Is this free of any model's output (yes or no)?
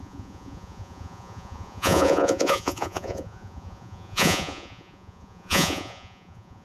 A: no